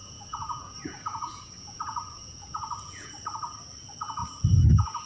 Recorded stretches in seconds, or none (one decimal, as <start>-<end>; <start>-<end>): 3.1-5.1

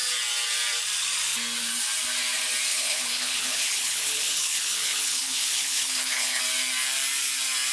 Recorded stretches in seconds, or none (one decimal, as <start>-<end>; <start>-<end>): 0.0-2.7; 6.4-7.7

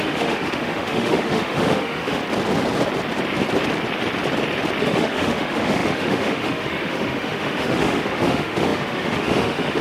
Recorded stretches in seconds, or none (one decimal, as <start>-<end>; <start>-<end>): 2.2-4.8